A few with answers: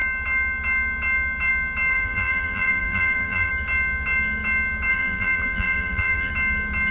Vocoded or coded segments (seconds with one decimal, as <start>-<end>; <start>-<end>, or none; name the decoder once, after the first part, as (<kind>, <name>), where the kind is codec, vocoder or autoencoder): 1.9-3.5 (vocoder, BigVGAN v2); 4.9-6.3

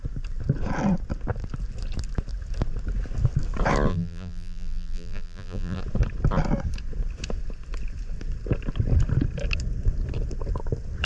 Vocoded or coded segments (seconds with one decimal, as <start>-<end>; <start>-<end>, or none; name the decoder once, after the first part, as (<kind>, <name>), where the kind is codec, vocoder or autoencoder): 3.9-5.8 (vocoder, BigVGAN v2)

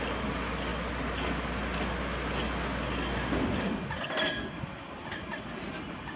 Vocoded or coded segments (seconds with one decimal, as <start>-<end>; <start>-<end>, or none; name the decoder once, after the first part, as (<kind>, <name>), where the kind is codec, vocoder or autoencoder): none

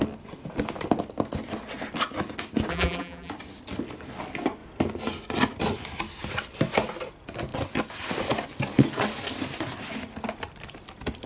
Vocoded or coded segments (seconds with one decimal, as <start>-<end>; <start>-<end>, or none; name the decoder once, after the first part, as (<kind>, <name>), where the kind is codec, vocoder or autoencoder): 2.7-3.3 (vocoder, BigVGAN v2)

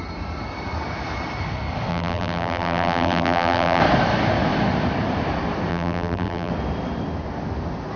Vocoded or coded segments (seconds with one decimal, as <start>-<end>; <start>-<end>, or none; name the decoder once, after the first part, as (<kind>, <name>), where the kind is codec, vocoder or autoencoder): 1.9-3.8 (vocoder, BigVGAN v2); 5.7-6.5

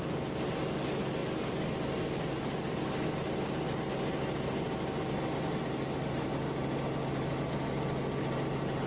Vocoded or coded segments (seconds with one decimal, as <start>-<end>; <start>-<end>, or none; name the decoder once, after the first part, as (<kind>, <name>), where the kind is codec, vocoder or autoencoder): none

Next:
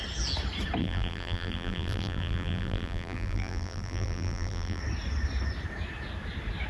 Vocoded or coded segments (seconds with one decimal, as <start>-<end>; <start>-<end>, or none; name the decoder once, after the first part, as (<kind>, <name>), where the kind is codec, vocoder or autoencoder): 0.8-4.8 (vocoder, BigVGAN v2)

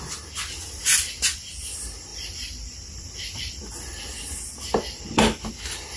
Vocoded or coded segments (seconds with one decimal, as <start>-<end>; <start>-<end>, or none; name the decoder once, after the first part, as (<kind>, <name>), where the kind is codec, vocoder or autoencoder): 2.1-5.2 (vocoder, BigVGAN v2)